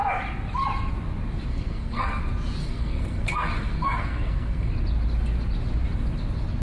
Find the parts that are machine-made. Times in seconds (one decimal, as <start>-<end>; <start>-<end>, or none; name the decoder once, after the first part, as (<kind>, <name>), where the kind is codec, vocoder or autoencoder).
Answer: 1.5-2.2 (codec, SNAC); 2.6-4.7

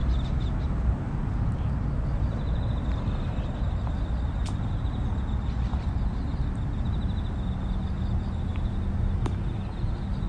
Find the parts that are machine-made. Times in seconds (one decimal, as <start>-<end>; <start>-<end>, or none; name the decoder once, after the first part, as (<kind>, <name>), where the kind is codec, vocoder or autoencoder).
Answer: none

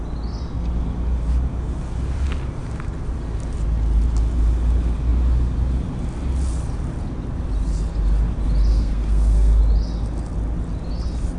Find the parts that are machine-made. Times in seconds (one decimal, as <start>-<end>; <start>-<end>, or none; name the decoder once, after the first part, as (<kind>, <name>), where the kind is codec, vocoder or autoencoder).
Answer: 8.7-9.6 (codec, SNAC)

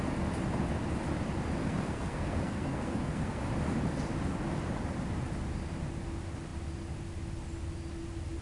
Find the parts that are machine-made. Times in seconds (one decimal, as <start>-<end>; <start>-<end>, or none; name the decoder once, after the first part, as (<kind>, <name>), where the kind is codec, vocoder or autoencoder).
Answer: 1.6-3.5 (codec, SNAC)

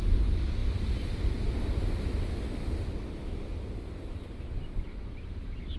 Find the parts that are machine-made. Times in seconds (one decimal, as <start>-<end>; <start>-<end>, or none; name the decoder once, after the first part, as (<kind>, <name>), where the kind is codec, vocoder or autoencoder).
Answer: none